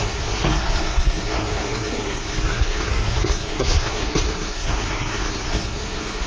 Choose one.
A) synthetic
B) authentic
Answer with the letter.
A